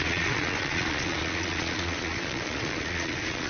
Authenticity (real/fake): fake